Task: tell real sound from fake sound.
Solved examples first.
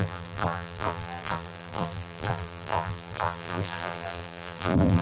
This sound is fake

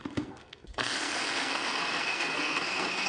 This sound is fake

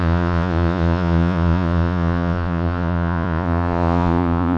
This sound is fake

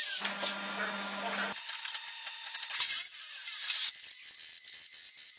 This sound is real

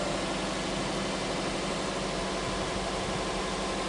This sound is real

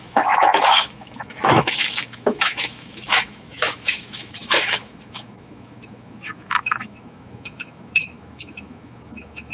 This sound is fake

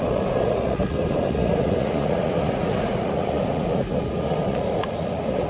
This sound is fake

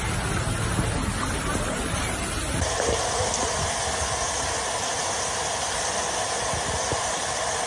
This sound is real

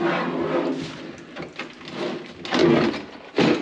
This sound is real